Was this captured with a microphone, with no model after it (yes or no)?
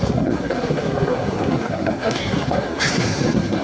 no